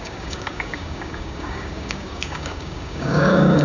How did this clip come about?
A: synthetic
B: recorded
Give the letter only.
A